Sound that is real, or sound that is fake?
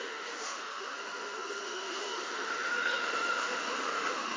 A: fake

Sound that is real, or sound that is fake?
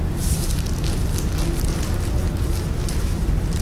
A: real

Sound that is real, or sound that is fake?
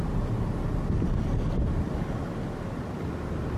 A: real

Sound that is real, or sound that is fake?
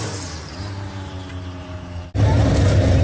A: fake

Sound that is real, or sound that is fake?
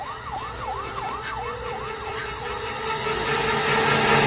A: real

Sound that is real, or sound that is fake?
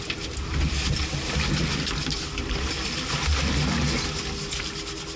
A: real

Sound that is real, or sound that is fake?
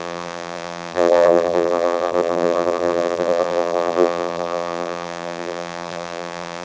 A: fake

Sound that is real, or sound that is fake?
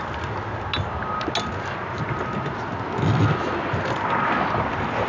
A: real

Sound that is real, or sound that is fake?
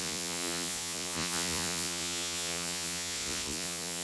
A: fake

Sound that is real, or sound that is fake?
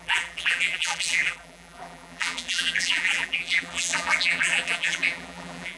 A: fake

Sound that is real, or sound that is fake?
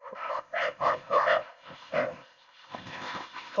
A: fake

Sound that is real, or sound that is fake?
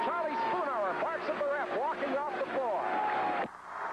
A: real